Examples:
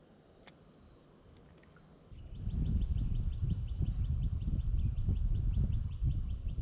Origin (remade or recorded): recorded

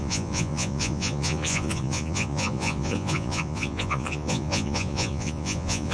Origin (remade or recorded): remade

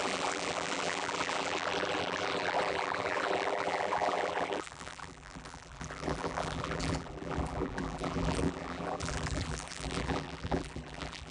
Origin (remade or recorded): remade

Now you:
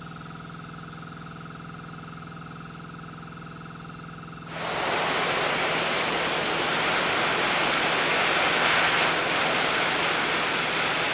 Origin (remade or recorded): recorded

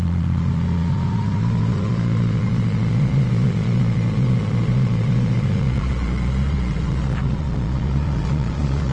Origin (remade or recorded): remade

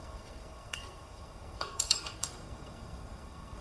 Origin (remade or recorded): remade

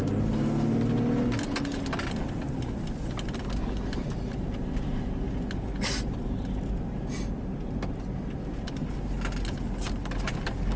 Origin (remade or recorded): recorded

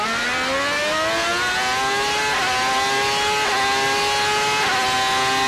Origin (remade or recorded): recorded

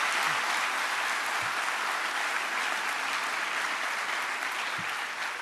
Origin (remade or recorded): recorded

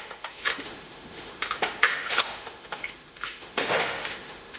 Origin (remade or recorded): remade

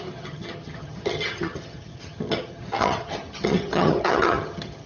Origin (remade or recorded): remade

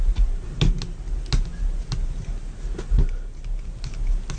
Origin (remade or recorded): recorded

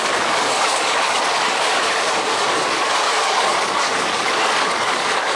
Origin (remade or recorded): remade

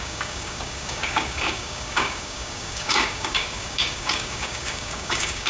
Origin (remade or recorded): remade